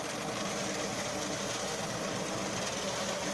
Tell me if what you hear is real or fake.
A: real